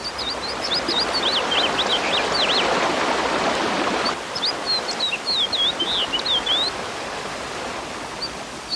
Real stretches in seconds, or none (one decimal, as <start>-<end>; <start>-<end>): 0.0-8.8